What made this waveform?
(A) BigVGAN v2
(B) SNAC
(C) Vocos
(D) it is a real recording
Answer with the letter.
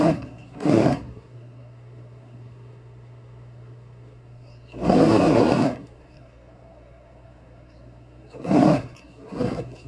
B